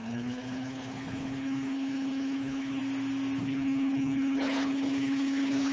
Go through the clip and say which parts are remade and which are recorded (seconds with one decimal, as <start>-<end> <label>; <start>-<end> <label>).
0.0-2.8 remade; 2.8-3.4 recorded; 3.4-5.7 remade